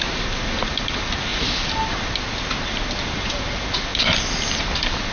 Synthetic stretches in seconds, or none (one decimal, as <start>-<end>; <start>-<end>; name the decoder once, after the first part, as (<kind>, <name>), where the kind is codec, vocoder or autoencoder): none

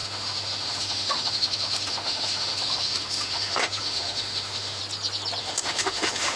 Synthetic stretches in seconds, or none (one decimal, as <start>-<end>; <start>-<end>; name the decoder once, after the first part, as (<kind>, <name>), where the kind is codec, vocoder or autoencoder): 0.0-4.8 (autoencoder, DAC-VAE); 5.4-6.4

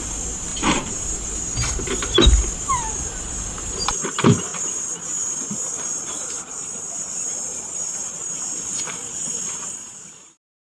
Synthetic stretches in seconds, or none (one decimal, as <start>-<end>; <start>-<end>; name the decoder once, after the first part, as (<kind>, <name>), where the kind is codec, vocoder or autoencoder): 0.5-1.4 (vocoder, BigVGAN v2)

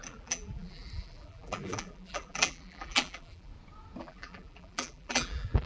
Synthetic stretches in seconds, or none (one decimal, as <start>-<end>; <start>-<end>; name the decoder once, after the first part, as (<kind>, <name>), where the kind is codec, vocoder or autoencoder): 0.0-3.5 (vocoder, BigVGAN v2); 4.0-5.7

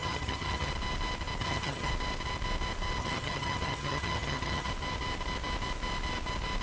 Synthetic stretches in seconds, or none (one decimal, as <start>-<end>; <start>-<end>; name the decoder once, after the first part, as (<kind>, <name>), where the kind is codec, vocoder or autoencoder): 0.0-0.7 (vocoder, HiFi-GAN); 1.4-1.9; 3.0-4.7

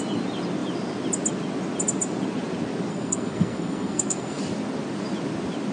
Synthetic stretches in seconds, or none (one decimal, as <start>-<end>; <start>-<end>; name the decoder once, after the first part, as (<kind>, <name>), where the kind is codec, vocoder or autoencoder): 2.9-4.4 (codec, SNAC)

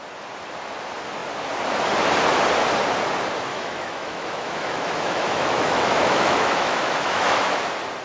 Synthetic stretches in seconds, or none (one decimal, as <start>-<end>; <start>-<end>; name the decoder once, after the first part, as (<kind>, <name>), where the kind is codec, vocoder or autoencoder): 3.5-7.6 (autoencoder, DAC-VAE)